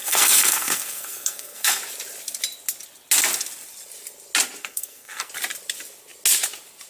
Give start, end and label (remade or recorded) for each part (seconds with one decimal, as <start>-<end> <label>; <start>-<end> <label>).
0.0-1.8 remade; 1.8-4.6 recorded; 4.6-5.3 remade; 5.3-6.9 recorded